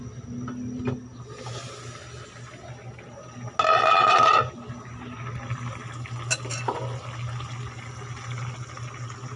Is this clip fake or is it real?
real